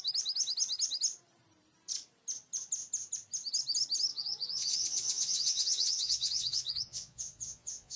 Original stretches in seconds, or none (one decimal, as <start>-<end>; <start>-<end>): 0.0-4.1